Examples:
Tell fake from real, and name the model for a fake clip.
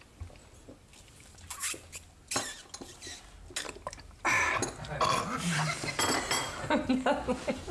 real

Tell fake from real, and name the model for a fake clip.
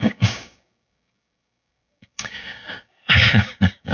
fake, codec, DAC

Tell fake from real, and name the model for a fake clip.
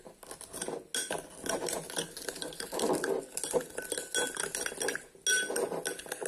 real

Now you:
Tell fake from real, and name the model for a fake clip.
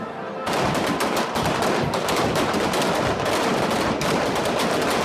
real